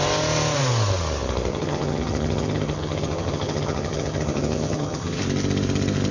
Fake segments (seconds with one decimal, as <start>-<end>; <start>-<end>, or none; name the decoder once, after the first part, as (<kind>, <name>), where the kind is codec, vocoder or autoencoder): 1.5-5.2 (vocoder, HiFi-GAN)

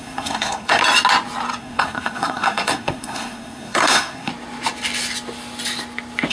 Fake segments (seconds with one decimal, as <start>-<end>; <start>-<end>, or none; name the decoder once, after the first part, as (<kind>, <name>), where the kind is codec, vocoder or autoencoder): 0.0-0.8 (codec, SNAC); 1.6-4.3

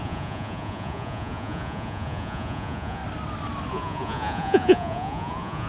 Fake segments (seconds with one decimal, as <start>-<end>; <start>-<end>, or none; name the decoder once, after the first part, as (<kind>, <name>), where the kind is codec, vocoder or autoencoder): 0.0-3.0 (vocoder, Vocos); 3.7-5.7

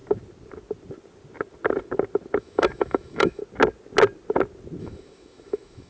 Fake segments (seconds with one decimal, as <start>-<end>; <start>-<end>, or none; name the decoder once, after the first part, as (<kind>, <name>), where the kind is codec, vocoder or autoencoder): 2.4-3.4 (autoencoder, DAC-VAE); 4.8-5.9

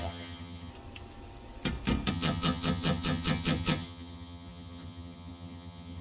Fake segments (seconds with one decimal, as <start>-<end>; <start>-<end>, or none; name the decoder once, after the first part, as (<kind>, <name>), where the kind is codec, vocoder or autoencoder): 0.0-0.7 (vocoder, HiFi-GAN); 2.1-6.0

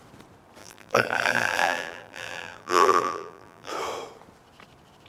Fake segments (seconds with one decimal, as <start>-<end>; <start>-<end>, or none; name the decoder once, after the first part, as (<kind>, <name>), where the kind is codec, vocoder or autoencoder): 0.6-3.7 (vocoder, BigVGAN v2)

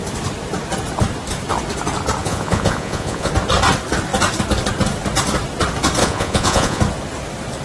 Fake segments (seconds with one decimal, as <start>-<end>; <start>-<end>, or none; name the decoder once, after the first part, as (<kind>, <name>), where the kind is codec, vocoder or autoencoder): 2.2-3.3 (vocoder, Vocos); 6.0-6.8

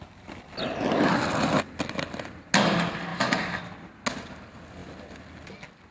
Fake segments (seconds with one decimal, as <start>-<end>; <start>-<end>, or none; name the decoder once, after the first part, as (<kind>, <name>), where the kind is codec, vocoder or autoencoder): 3.1-3.9 (vocoder, BigVGAN v2)